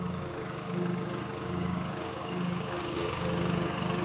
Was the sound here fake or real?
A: fake